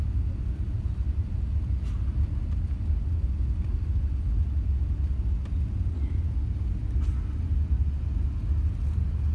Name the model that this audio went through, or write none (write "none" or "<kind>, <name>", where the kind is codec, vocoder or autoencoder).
none